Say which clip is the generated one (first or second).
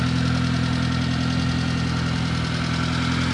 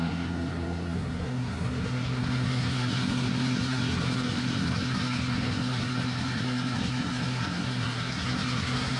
second